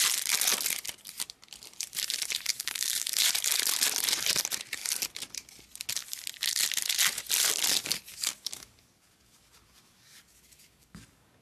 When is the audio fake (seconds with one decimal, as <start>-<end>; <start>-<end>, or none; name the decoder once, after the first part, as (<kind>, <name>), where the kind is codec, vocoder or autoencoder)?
2.5-3.3 (codec, DAC); 8.1-11.4